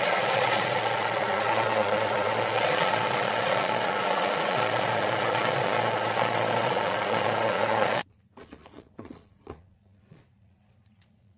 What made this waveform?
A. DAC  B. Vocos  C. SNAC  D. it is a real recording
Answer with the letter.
B